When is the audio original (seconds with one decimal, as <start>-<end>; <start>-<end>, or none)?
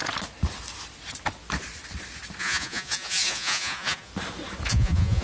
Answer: 0.0-2.4; 4.1-4.7